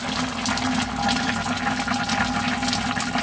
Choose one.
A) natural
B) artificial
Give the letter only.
A